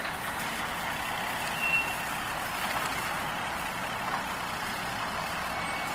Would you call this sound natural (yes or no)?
yes